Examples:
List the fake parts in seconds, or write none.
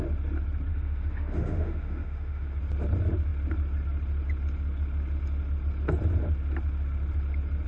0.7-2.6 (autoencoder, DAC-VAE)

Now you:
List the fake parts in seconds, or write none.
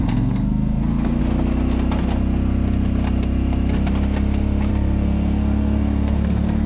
0.0-1.2 (codec, SNAC); 4.7-6.7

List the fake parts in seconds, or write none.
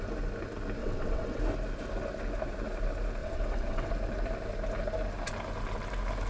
0.8-1.4 (vocoder, WaveNeXt); 3.2-3.9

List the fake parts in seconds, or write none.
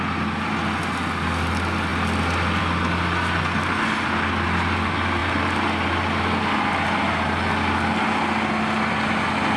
none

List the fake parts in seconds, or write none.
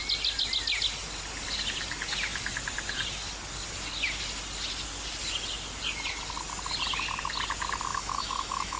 7.9-8.8 (autoencoder, DAC-VAE)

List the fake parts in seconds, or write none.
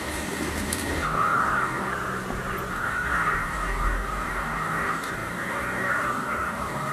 0.0-1.9 (codec, DAC); 2.7-6.9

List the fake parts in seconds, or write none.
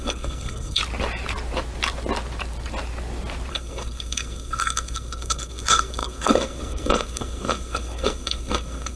0.0-0.8 (codec, SNAC); 3.5-9.0